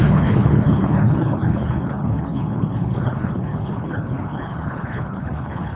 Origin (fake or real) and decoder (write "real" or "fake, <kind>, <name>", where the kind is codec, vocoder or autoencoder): fake, codec, HILCodec